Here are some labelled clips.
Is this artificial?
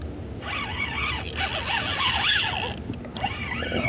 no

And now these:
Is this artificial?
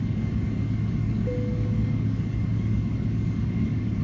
yes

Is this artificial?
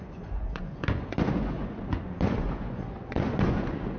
yes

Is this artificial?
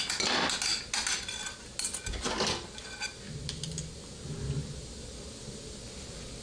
no